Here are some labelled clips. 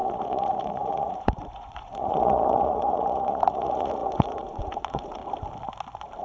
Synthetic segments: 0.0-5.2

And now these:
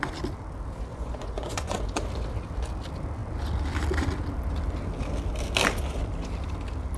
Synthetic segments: 0.9-1.9

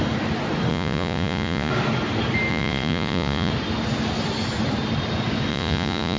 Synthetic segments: 0.7-1.7; 2.5-3.5; 5.5-6.2

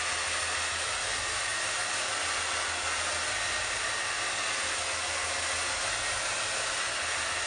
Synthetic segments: none